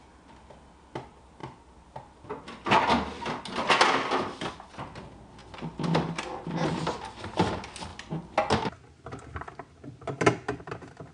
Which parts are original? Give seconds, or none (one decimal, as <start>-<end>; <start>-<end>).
0.0-11.1